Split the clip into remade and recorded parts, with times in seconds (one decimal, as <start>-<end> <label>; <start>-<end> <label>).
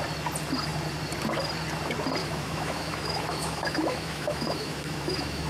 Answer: 0.0-2.2 recorded; 2.2-5.5 remade